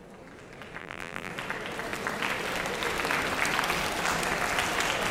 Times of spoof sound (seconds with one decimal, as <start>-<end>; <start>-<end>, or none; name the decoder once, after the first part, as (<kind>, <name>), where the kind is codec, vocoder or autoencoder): 0.8-1.3 (vocoder, BigVGAN v2)